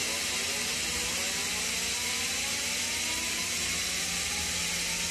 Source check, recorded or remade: recorded